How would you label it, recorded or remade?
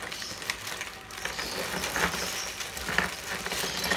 recorded